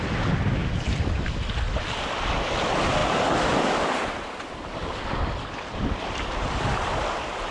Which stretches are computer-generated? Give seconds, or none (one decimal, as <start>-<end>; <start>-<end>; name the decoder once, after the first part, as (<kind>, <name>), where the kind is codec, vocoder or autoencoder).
none